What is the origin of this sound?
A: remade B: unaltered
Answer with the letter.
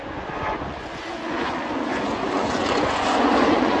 A